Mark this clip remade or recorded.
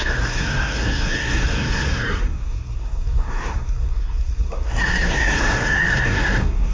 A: remade